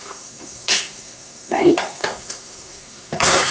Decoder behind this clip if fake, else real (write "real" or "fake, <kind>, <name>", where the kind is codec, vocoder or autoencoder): fake, codec, SNAC